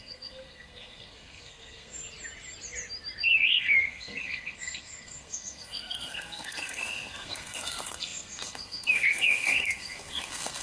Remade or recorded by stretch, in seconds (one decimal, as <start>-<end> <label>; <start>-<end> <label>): 0.0-2.0 remade; 2.0-3.2 recorded; 3.2-10.6 remade

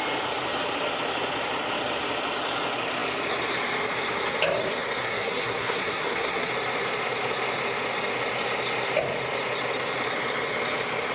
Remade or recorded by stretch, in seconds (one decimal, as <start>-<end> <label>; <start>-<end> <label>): 0.0-5.0 recorded; 5.0-6.5 remade; 6.5-11.1 recorded

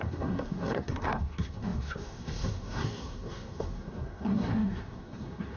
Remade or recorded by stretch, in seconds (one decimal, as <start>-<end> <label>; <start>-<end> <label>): 0.0-5.6 remade